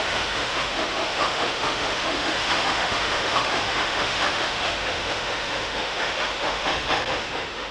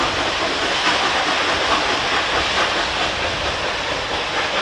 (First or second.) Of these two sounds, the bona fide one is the second